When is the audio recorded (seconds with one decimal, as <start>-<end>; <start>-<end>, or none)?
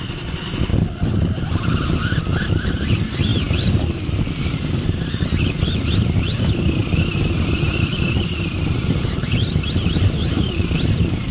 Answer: 0.7-2.5; 6.8-7.7